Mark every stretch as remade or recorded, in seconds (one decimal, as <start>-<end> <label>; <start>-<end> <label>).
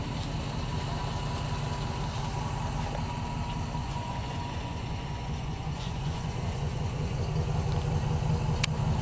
0.0-3.8 recorded; 3.8-7.2 remade; 7.2-9.0 recorded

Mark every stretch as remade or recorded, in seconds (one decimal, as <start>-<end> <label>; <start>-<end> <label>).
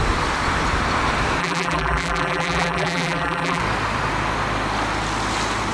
0.0-1.4 recorded; 1.4-3.6 remade; 3.6-5.7 recorded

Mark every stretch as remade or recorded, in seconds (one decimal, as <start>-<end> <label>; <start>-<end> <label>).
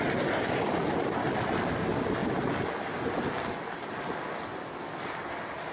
0.0-5.7 recorded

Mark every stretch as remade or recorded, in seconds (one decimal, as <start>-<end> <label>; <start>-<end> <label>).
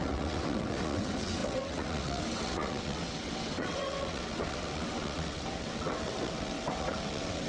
0.0-7.5 remade